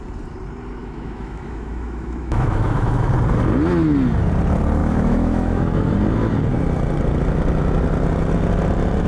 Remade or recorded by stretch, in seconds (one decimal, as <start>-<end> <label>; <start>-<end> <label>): 0.0-0.8 recorded; 0.8-3.1 remade; 3.1-4.8 recorded; 4.8-6.0 remade; 6.0-9.1 recorded